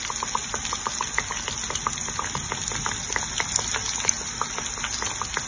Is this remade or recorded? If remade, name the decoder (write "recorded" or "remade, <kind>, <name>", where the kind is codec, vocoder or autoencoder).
recorded